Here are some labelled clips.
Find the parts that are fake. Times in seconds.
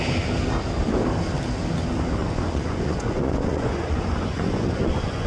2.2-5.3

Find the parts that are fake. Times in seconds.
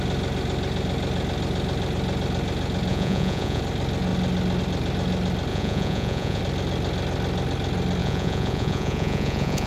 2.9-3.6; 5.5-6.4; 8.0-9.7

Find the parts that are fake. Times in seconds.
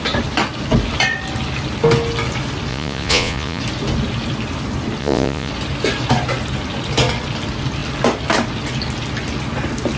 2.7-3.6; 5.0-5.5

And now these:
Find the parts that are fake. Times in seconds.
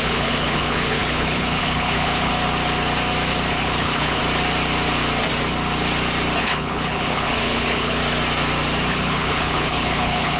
0.0-2.3; 3.5-4.2; 6.4-8.0; 8.9-10.4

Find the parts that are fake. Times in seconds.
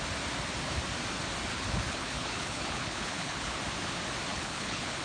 1.5-3.6; 4.3-5.0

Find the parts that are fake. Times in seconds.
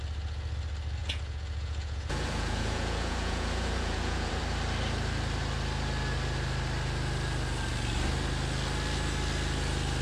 1.0-4.4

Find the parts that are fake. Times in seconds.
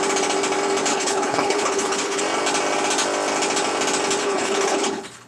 0.9-2.2; 4.2-5.3